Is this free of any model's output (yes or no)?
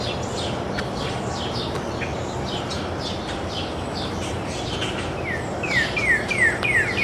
yes